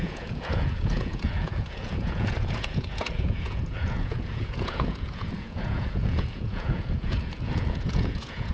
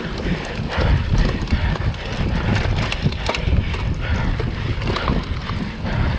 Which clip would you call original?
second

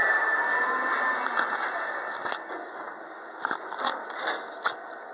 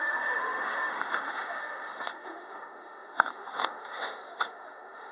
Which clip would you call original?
first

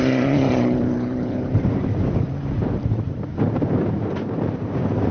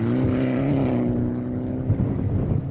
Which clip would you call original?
second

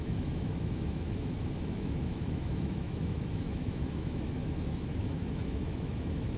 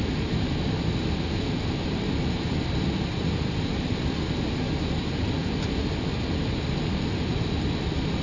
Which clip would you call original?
second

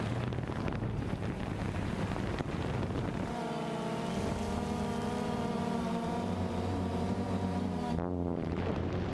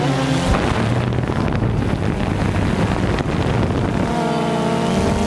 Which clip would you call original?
second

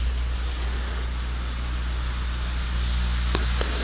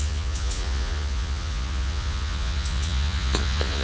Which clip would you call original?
first